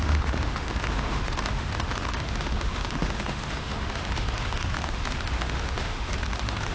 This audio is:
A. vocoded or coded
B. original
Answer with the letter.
A